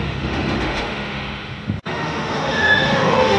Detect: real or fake fake